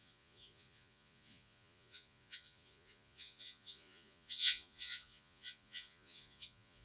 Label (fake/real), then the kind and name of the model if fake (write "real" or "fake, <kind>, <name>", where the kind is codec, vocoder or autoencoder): fake, vocoder, Vocos